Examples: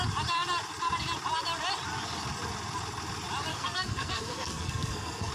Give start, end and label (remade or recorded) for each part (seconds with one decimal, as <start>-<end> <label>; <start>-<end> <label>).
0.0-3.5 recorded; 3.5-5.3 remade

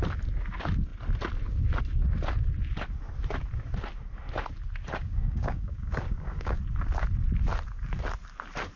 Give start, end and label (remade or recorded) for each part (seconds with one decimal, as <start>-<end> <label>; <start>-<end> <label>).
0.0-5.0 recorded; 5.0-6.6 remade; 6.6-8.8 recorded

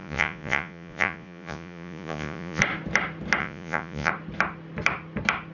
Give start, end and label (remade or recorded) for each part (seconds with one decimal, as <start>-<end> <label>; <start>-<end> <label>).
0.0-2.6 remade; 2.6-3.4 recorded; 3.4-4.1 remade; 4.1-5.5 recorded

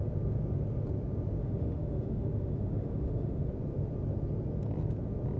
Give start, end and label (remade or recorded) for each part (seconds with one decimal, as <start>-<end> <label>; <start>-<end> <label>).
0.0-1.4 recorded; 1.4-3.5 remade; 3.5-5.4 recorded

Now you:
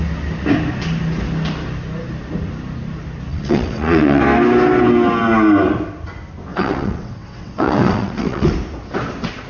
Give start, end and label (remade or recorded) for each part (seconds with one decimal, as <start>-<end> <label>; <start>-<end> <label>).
0.0-3.3 recorded; 3.3-4.2 remade; 4.2-6.5 recorded; 6.5-8.5 remade; 8.5-9.5 recorded

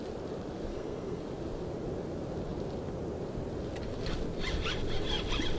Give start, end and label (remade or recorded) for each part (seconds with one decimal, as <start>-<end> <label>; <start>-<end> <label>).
0.0-0.7 recorded; 0.7-1.2 remade; 1.2-5.6 recorded

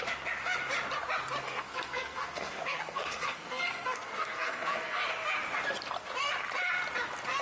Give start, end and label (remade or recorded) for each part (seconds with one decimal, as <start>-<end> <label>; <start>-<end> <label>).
0.0-1.4 recorded; 1.4-5.0 remade; 5.0-7.4 recorded